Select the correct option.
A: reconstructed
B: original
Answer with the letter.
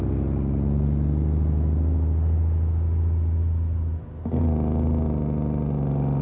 B